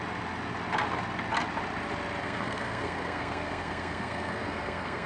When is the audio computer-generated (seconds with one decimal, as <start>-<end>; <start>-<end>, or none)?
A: 2.2-5.1